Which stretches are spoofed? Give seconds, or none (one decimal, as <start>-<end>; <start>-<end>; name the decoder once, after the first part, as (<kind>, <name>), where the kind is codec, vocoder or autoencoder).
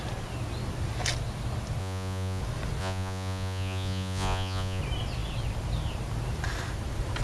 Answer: 1.8-2.4 (vocoder, Vocos); 2.8-4.8